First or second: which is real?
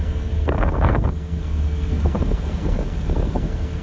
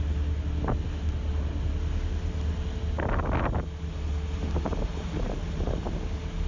second